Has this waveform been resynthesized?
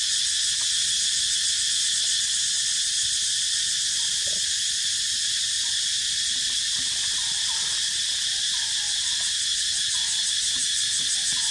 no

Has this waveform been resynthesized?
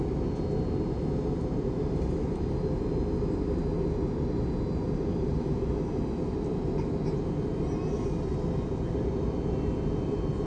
no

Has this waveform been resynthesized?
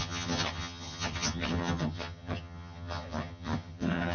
yes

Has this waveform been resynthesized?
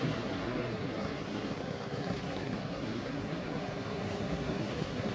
yes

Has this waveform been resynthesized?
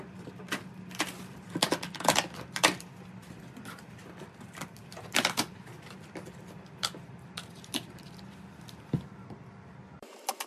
yes